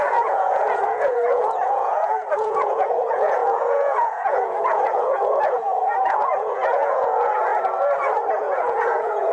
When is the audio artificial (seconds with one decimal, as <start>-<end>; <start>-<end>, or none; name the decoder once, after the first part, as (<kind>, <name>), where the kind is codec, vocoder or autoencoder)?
0.0-7.5 (vocoder, Vocos); 8.4-9.3